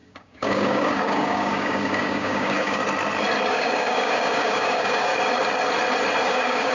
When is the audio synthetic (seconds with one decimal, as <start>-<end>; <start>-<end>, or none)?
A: 0.0-2.8; 3.5-5.1; 6.3-6.7